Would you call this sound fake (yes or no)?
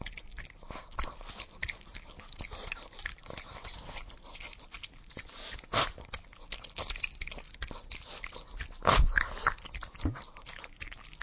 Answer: no